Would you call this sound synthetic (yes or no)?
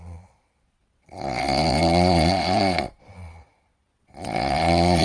yes